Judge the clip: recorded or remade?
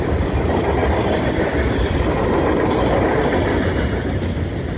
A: recorded